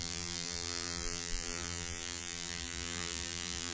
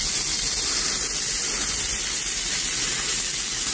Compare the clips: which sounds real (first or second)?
second